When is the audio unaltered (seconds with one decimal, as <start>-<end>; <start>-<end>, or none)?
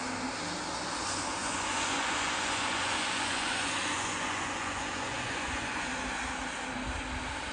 0.0-1.4; 5.9-7.5